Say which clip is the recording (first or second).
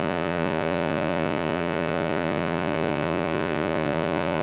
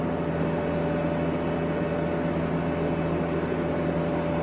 second